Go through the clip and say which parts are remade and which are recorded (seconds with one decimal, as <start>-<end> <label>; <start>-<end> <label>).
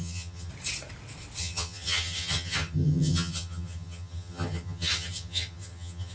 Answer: 0.0-0.5 remade; 0.5-1.4 recorded; 1.4-6.1 remade